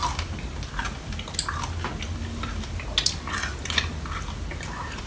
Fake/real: real